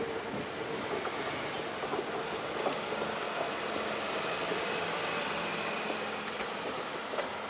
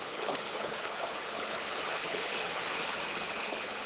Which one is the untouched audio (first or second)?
first